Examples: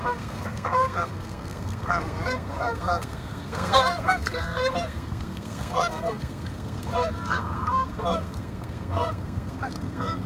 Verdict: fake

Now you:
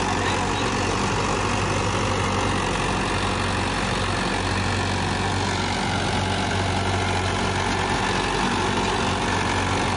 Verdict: real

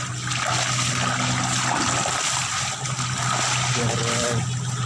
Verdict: real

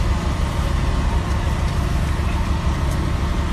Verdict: real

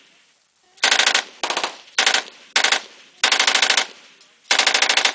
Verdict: real